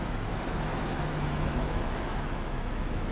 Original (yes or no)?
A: no